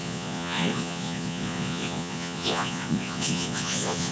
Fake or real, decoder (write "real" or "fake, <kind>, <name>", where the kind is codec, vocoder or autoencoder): fake, vocoder, Vocos